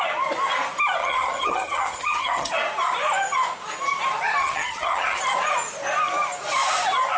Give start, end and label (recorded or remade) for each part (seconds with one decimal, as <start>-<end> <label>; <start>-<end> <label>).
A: 0.0-1.0 recorded; 1.0-2.5 remade; 2.5-4.4 recorded; 4.4-5.2 remade; 5.2-7.2 recorded